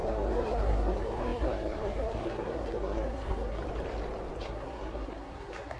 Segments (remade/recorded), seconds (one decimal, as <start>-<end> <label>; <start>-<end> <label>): 0.0-3.6 remade; 3.6-4.4 recorded; 4.4-5.8 remade